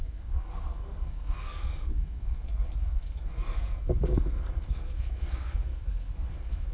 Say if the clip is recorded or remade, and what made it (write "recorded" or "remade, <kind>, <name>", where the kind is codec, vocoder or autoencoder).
remade, codec, SNAC